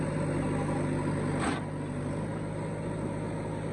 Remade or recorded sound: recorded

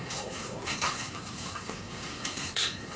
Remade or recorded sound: remade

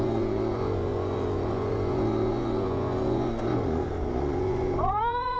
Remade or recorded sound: remade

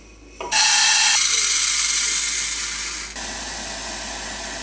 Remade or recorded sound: recorded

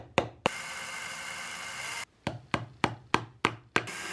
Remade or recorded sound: recorded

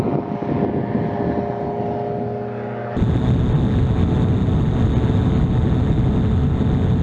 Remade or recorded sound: recorded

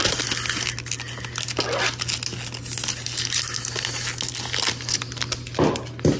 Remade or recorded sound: recorded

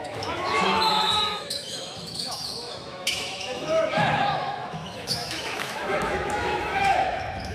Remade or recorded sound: remade